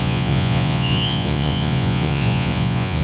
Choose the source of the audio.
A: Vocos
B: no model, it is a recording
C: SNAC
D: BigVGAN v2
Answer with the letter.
A